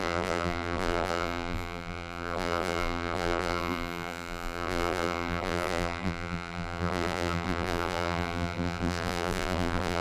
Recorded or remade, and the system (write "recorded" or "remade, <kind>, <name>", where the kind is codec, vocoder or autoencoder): remade, vocoder, BigVGAN v2